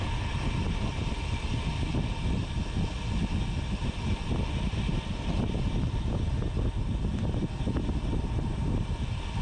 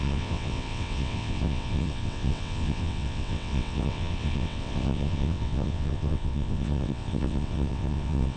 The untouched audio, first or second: first